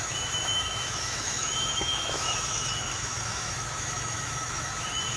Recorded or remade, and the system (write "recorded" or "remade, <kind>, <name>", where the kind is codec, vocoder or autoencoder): remade, autoencoder, DAC-VAE